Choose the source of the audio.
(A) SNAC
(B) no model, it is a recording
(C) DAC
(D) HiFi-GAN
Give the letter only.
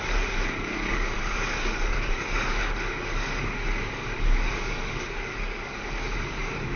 C